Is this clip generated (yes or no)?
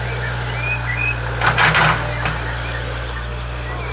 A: no